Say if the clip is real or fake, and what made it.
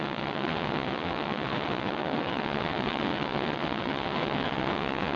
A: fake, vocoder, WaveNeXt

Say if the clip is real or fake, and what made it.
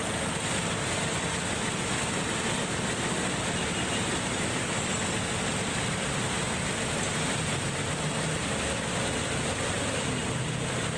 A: real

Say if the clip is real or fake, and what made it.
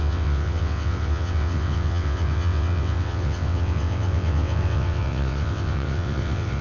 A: fake, vocoder, WaveNeXt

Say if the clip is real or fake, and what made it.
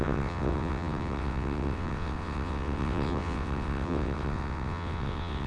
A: fake, vocoder, WaveNeXt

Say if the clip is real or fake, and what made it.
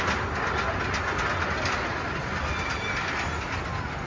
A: real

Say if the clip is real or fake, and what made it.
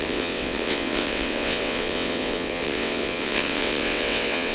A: fake, vocoder, WaveNeXt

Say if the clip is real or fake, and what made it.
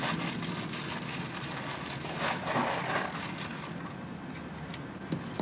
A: real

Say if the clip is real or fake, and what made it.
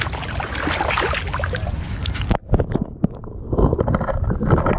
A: real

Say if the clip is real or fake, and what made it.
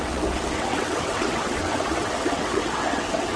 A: fake, vocoder, WaveNeXt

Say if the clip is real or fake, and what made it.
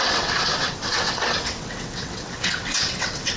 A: fake, vocoder, WaveNeXt